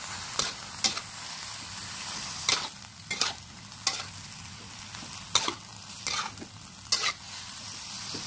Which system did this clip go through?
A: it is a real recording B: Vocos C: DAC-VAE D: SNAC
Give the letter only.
A